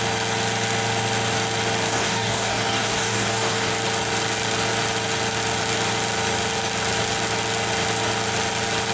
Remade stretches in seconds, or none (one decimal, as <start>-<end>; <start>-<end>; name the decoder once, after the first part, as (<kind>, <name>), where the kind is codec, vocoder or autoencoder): 1.9-3.7 (codec, DAC)